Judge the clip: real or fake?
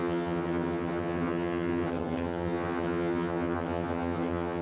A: fake